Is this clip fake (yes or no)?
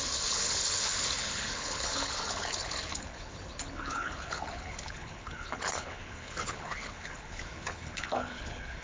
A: yes